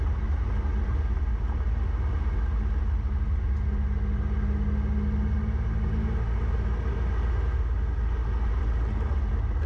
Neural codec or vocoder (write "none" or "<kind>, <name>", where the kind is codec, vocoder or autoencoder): none